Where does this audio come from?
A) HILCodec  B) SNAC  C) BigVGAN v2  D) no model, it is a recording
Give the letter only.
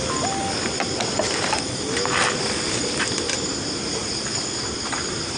D